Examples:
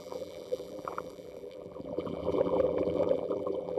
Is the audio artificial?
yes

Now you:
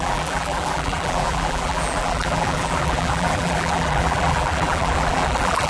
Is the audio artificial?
yes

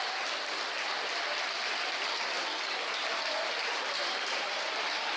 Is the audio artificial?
no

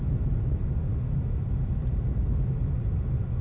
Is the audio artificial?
yes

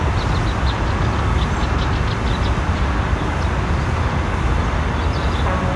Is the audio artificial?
no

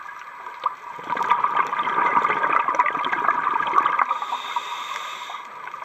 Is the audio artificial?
no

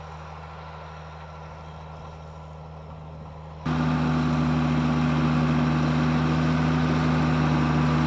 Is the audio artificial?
no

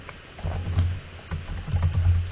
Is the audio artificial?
no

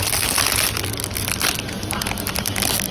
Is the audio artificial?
no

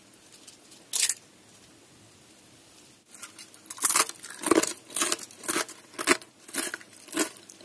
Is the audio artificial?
no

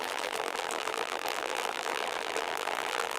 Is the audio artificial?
yes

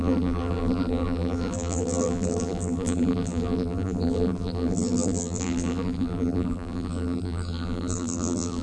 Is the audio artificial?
yes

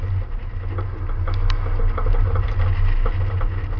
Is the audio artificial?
no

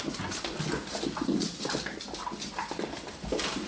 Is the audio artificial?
no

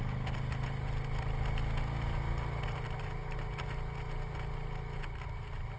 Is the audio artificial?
no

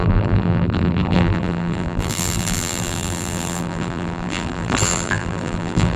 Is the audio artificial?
yes